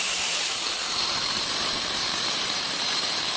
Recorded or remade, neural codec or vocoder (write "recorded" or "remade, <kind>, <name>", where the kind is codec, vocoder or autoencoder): remade, vocoder, BigVGAN v2